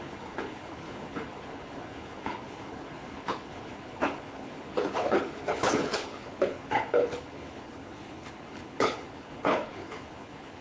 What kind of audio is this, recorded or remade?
remade